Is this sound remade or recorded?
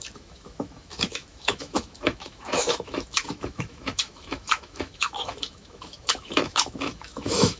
remade